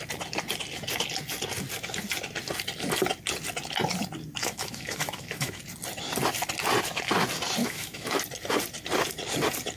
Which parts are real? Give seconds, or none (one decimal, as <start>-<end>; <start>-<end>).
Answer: 0.0-4.4; 5.6-7.6; 8.2-9.8